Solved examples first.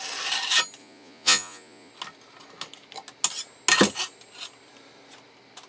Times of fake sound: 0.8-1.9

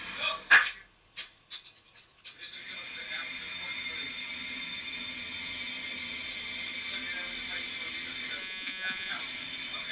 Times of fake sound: 8.4-9.1